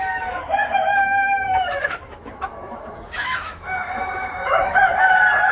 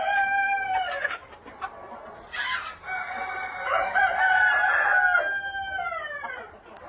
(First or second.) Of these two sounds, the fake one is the first